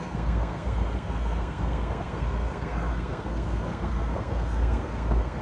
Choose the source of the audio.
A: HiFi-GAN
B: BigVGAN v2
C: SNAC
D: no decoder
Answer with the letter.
C